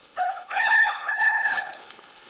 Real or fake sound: fake